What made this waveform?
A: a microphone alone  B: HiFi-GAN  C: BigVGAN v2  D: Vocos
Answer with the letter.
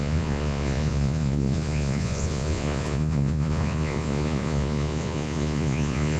D